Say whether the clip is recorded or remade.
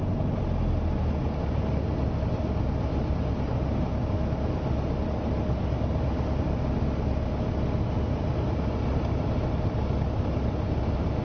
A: recorded